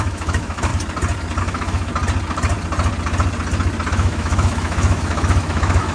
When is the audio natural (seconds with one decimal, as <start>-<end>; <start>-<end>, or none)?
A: 0.7-1.4; 1.9-3.9